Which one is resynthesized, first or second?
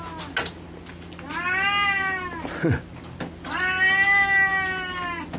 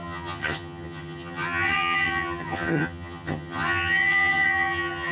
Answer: second